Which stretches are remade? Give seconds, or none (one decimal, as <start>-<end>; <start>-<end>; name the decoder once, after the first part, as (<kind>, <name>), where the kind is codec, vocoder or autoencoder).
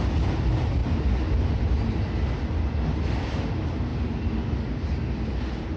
none